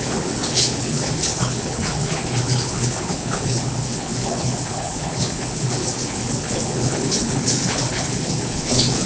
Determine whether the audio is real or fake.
fake